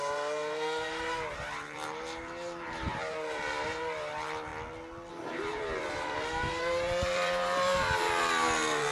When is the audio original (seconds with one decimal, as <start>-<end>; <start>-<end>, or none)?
4.5-5.1